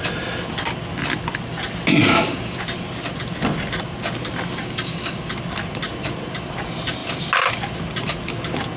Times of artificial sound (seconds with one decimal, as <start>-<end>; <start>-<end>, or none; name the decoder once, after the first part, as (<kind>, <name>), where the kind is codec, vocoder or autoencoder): 2.0-2.6 (codec, DAC); 4.6-5.3